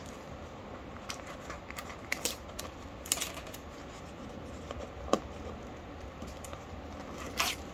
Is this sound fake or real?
real